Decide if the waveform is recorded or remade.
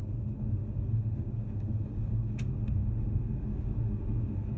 remade